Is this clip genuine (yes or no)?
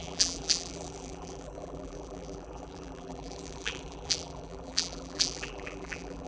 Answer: no